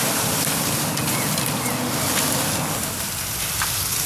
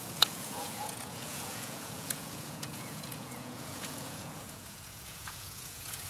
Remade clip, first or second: second